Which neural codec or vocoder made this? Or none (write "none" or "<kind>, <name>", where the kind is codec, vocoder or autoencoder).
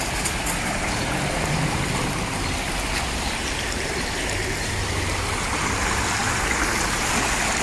none